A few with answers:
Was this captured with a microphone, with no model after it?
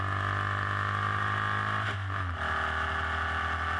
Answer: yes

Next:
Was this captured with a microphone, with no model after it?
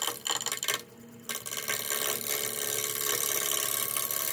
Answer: yes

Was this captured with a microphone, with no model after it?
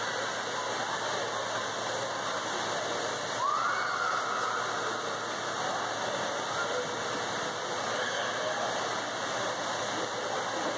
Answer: yes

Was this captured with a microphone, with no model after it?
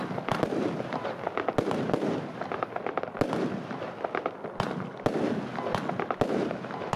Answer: yes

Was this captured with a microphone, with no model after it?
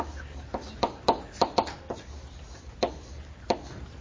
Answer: yes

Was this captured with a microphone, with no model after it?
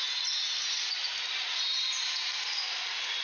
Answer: yes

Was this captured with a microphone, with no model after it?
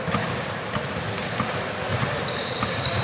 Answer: no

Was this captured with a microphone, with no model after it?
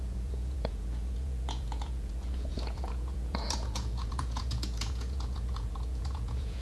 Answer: no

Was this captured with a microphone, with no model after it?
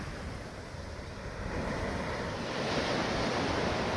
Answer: yes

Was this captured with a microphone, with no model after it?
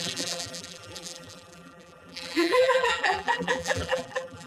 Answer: no